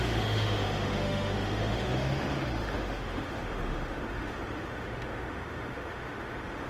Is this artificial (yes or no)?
yes